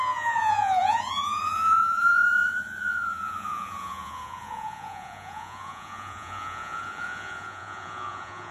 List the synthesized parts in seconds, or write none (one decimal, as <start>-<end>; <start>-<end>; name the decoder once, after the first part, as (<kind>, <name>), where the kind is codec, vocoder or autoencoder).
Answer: 0.0-8.5 (vocoder, Vocos)